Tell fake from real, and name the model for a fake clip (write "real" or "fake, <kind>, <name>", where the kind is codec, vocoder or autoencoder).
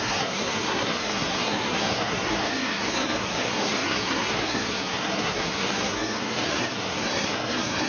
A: fake, codec, SNAC